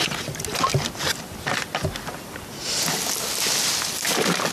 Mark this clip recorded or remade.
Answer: recorded